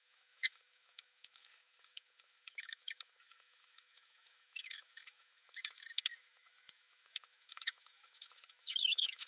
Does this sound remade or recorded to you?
remade